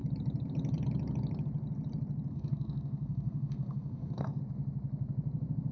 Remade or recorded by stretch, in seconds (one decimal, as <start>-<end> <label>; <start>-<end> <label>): 0.0-2.3 recorded; 2.3-4.4 remade; 4.4-5.7 recorded